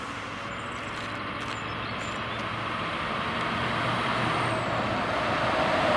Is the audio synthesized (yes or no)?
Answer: no